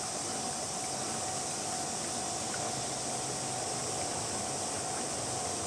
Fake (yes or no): no